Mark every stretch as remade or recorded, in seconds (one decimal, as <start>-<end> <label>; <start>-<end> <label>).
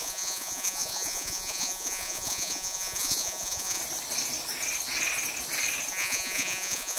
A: 0.0-3.8 remade; 3.8-5.9 recorded; 5.9-7.0 remade